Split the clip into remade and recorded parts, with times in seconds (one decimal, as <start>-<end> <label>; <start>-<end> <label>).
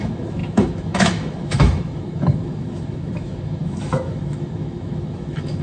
0.0-5.6 remade